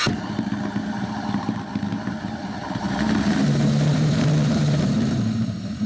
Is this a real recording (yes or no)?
no